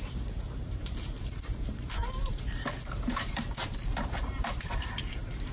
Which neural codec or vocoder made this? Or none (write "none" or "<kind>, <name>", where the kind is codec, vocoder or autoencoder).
vocoder, BigVGAN v2